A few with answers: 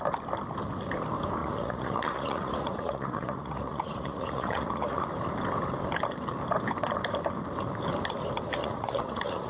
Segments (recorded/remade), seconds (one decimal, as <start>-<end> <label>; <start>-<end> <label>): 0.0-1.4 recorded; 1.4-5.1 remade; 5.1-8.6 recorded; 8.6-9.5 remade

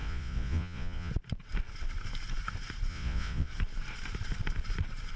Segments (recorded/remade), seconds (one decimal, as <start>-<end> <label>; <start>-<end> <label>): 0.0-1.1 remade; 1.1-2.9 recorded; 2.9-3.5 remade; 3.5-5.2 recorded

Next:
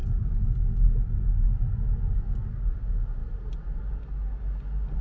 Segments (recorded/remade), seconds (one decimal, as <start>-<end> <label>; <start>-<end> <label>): 0.0-5.0 recorded

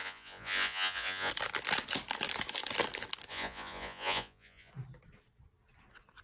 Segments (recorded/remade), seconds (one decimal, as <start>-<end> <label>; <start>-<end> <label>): 0.0-1.3 remade; 1.3-3.3 recorded; 3.3-4.7 remade; 4.7-6.2 recorded

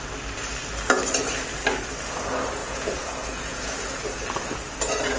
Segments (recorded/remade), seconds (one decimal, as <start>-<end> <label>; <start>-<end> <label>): 0.0-2.6 recorded; 2.6-4.0 remade; 4.0-5.2 recorded